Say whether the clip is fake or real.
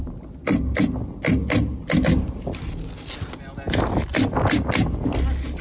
real